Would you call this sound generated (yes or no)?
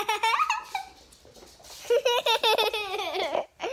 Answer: no